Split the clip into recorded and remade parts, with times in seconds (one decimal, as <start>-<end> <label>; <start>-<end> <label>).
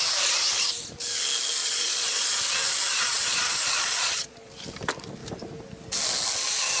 0.0-1.6 recorded; 1.6-2.4 remade; 2.4-2.9 recorded; 2.9-4.5 remade; 4.5-6.8 recorded